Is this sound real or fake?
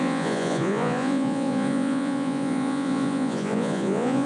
fake